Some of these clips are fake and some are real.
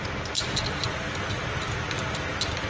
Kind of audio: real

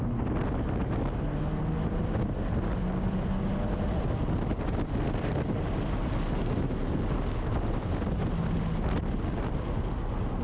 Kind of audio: real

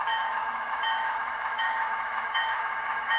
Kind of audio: fake